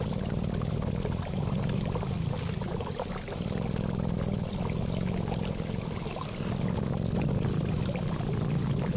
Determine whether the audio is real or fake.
real